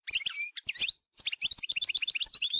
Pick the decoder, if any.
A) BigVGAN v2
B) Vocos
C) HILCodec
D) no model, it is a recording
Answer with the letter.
A